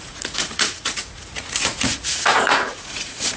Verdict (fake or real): fake